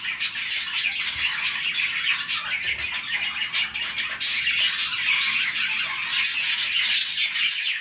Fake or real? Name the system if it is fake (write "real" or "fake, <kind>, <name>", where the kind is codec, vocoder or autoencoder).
real